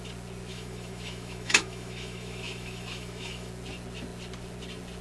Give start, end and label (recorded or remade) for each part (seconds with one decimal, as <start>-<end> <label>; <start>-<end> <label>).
0.0-0.5 recorded; 0.5-3.5 remade; 3.5-5.0 recorded